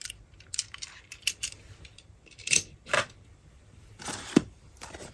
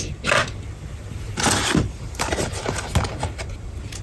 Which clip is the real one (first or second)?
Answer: second